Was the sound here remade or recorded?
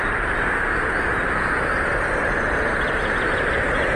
recorded